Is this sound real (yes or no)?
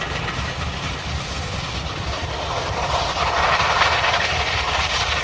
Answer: yes